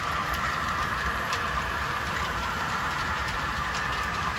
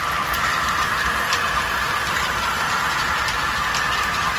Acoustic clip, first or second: second